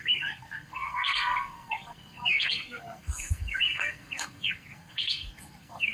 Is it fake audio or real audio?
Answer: fake